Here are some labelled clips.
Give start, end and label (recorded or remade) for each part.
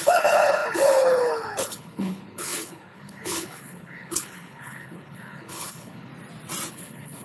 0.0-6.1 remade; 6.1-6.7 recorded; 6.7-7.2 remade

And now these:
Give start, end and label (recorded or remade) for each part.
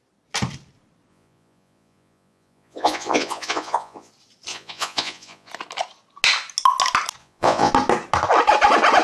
0.0-1.1 recorded; 1.1-4.1 remade; 4.1-4.5 recorded; 4.5-5.5 remade; 5.5-7.2 recorded; 7.2-7.7 remade; 7.7-9.0 recorded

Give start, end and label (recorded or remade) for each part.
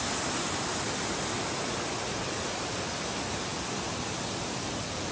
0.0-5.1 recorded